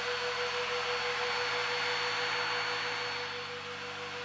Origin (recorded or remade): recorded